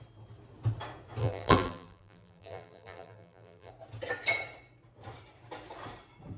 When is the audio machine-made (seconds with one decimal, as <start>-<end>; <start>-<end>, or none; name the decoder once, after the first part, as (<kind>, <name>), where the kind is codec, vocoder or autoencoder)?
1.2-3.7 (vocoder, BigVGAN v2)